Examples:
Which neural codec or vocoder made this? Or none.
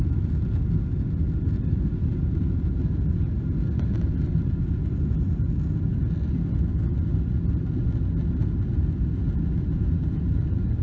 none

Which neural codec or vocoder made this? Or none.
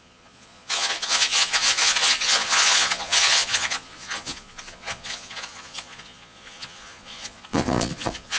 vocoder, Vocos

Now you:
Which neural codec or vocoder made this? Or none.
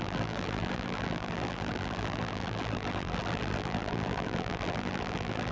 vocoder, BigVGAN v2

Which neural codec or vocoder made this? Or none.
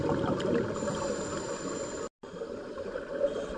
none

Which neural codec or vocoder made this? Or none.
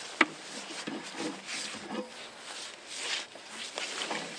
none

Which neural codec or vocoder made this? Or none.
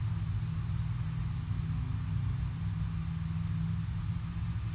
none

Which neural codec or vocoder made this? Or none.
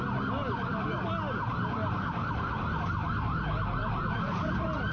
none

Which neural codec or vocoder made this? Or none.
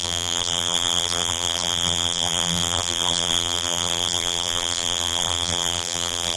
vocoder, BigVGAN v2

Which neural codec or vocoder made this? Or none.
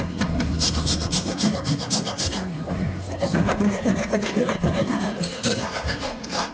codec, SNAC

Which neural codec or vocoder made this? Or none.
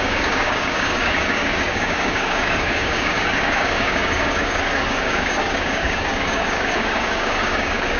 codec, DAC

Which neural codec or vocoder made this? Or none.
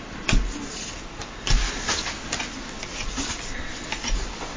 none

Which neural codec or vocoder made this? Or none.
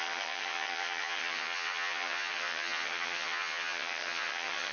vocoder, HiFi-GAN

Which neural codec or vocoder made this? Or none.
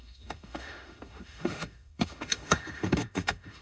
autoencoder, DAC-VAE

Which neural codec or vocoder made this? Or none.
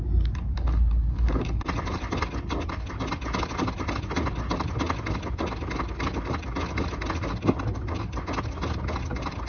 none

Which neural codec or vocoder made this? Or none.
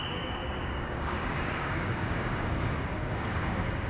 codec, DAC